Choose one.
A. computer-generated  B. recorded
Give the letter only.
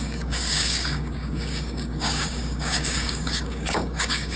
A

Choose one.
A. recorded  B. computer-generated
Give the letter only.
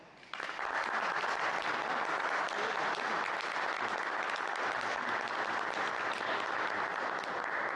A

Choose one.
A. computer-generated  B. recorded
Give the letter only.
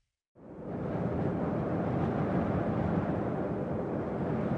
B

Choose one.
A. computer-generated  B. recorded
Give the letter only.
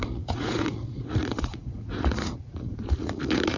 A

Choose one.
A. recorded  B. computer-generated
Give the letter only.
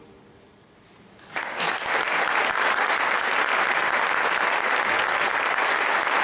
A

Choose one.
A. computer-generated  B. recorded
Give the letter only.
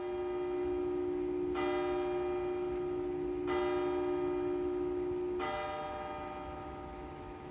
B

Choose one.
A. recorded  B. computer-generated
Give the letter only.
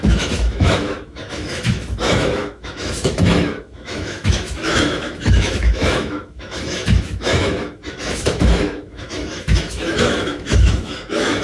B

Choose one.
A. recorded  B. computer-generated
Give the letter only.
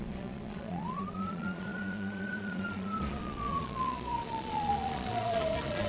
B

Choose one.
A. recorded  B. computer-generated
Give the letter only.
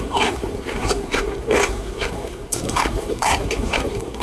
B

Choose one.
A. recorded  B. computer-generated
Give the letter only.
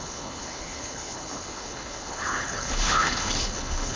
B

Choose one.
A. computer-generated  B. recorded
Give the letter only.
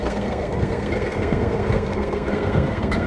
A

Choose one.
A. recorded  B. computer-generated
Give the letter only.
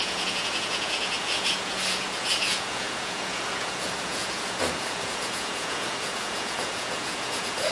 B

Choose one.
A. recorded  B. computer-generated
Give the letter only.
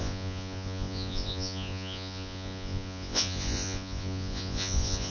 B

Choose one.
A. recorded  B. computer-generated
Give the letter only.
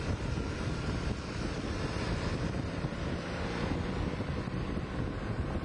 A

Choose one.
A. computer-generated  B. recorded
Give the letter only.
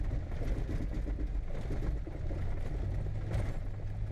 B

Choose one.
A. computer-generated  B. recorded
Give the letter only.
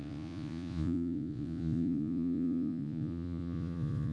A